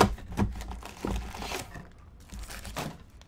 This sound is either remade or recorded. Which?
recorded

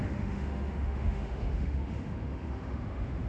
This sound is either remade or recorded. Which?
remade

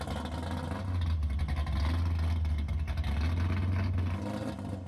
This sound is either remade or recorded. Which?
recorded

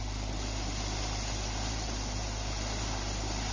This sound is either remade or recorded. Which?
recorded